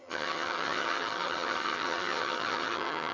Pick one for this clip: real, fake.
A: fake